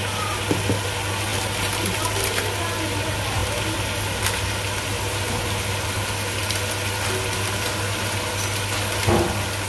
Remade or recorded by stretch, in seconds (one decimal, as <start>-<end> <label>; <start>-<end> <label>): 0.0-9.7 recorded